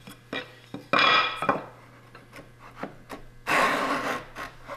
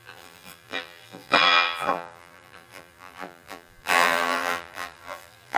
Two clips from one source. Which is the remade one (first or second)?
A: second